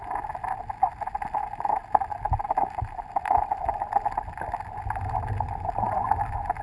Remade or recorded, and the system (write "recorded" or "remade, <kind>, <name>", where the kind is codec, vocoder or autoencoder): recorded